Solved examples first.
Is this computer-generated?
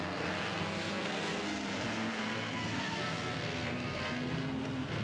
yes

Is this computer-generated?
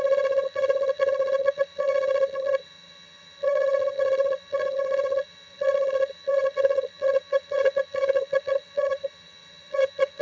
yes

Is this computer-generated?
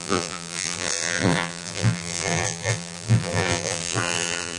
yes